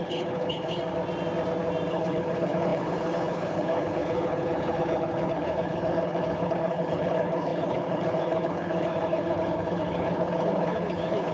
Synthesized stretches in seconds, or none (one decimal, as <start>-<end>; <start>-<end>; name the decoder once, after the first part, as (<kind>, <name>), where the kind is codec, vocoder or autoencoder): 0.0-0.8 (codec, HILCodec); 1.9-11.3